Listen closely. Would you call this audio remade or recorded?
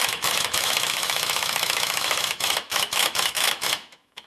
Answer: remade